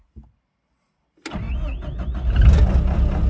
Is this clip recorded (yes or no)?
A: yes